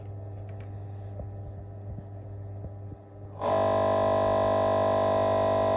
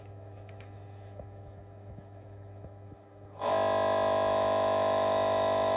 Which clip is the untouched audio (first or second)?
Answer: first